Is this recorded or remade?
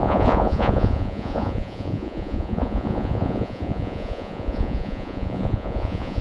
remade